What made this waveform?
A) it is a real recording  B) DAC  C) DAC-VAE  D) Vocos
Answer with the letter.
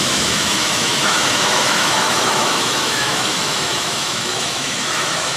C